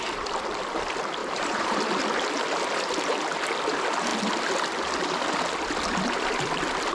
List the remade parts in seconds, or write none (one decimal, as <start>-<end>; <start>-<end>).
1.2-1.8